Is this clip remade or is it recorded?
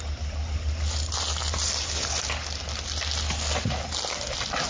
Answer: recorded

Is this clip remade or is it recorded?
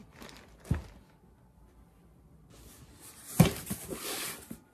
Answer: recorded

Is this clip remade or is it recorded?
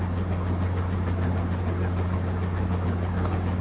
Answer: recorded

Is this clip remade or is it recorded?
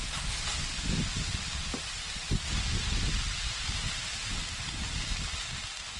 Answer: recorded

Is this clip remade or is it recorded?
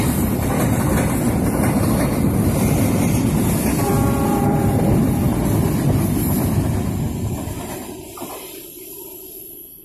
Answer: remade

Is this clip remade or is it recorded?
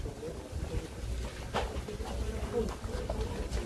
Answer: recorded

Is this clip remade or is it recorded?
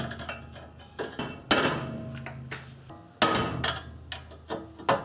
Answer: recorded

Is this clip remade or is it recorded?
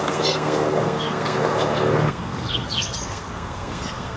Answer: remade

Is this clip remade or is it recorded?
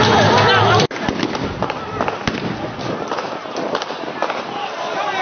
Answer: recorded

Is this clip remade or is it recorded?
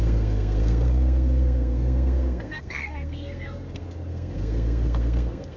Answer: remade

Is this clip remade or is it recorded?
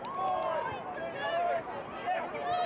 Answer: recorded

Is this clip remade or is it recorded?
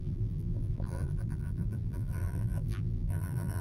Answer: remade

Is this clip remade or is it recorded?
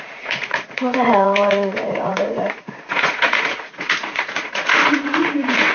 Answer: remade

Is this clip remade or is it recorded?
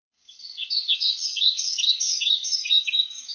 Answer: remade